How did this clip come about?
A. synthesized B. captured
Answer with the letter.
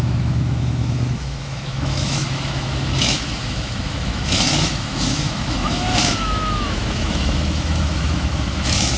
A